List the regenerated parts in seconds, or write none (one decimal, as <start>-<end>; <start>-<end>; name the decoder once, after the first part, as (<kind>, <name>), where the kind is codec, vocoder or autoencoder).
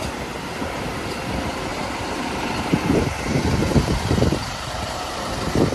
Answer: 1.7-5.1 (vocoder, BigVGAN v2)